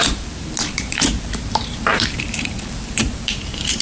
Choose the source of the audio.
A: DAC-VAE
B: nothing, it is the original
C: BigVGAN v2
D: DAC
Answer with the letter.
C